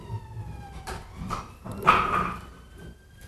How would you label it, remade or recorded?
recorded